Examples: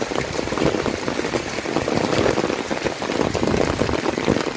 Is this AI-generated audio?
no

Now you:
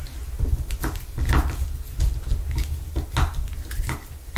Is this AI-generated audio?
no